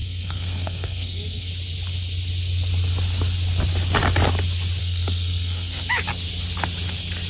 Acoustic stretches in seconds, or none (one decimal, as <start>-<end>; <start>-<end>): 1.5-4.8; 5.9-7.3